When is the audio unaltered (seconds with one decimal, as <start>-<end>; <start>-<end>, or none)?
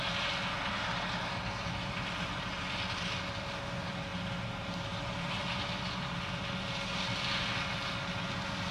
0.0-8.7